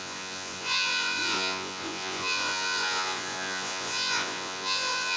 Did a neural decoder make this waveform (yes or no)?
yes